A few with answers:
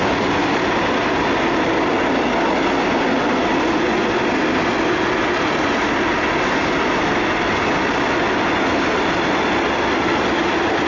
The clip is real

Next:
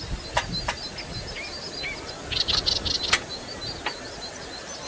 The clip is real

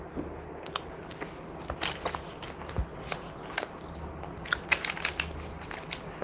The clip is real